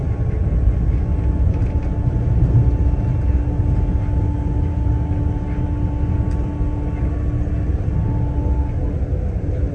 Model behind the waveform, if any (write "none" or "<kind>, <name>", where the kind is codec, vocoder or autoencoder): none